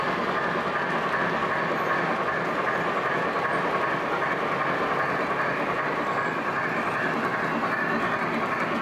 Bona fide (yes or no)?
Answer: yes